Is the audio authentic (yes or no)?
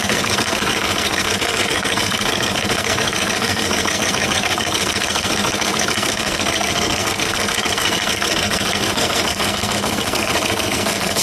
no